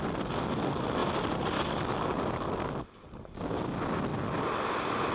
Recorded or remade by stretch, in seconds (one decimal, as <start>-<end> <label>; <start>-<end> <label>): 0.0-5.1 recorded